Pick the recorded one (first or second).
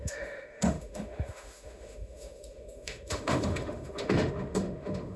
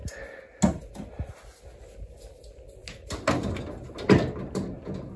second